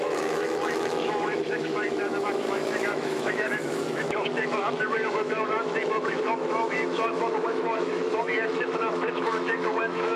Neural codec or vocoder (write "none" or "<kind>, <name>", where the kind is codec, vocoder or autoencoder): autoencoder, DAC-VAE